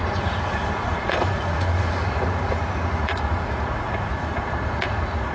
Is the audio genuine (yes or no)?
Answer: no